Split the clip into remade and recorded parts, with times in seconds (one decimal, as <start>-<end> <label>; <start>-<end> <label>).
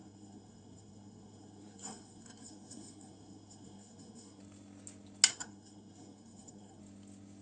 0.0-4.4 remade; 4.4-5.3 recorded; 5.3-6.8 remade; 6.8-7.4 recorded